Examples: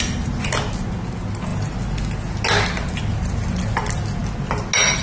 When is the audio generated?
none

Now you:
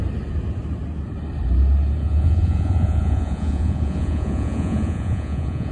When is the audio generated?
2.0-5.7 (vocoder, Vocos)

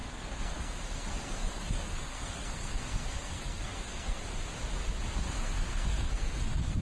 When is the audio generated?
0.0-4.2 (codec, SNAC); 5.1-6.8

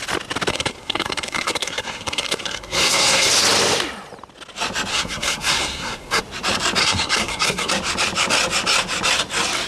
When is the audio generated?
0.5-3.3 (codec, SNAC); 4.9-6.2; 6.8-7.7